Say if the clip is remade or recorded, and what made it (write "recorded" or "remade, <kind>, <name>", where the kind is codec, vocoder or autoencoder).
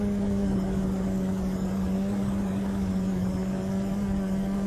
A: remade, codec, DAC